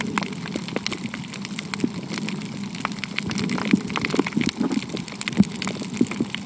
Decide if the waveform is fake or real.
real